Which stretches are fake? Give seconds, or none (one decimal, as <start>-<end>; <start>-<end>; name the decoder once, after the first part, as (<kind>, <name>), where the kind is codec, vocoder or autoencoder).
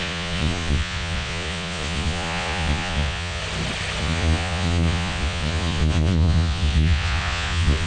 0.0-3.4 (vocoder, Vocos); 4.0-7.9